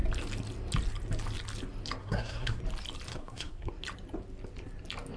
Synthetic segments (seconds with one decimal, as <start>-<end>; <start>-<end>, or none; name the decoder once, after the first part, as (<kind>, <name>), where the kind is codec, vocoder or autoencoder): 2.0-2.6 (codec, SNAC); 3.1-3.7